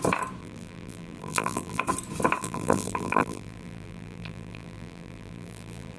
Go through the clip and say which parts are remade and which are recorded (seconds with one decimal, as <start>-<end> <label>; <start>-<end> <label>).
0.0-0.4 recorded; 0.4-1.8 remade; 1.8-2.4 recorded; 2.4-6.0 remade